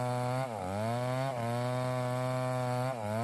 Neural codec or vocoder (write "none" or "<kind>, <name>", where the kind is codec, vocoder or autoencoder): none